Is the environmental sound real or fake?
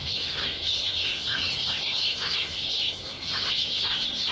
fake